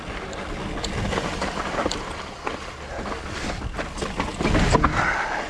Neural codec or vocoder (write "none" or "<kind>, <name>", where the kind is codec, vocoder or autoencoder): none